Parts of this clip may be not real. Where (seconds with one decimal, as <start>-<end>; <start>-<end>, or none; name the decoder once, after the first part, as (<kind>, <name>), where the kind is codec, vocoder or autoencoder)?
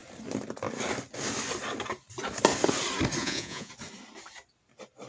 3.2-3.7 (vocoder, Vocos)